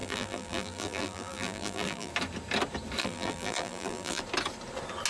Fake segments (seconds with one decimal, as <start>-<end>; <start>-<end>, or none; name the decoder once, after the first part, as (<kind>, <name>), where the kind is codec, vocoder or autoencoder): 0.0-2.1 (vocoder, BigVGAN v2); 3.0-4.2